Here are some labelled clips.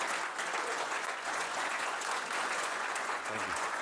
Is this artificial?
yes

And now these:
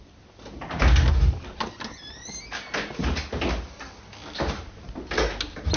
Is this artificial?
no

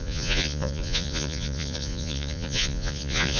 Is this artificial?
yes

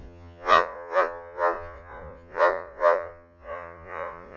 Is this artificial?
yes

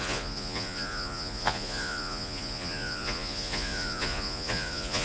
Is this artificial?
yes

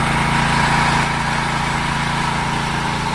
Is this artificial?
no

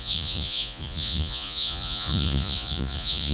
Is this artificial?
yes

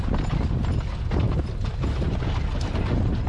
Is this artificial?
no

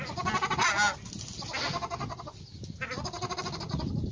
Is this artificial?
no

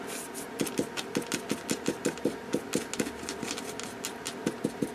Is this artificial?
no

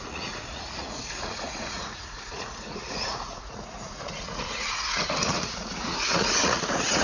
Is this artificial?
yes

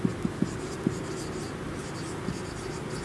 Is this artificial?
no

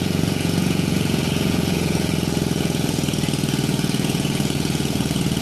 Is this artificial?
yes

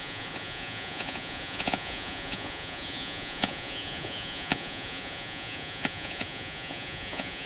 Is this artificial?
yes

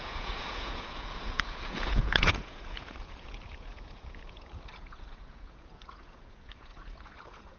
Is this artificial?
yes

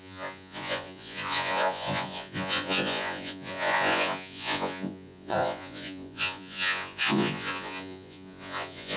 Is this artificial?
yes